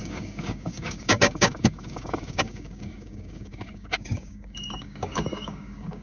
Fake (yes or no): yes